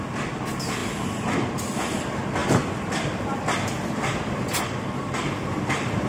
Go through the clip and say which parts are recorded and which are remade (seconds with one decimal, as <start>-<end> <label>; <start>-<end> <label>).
0.0-2.4 recorded; 2.4-6.1 remade